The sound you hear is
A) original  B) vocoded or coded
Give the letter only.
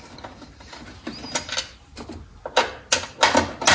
A